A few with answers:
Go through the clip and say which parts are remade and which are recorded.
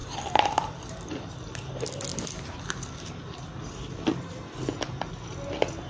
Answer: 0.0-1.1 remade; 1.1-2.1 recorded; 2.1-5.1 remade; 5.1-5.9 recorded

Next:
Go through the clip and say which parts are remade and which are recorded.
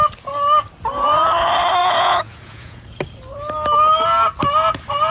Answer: 0.0-1.8 recorded; 1.8-3.0 remade; 3.0-5.1 recorded